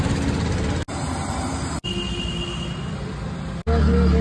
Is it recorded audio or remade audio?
recorded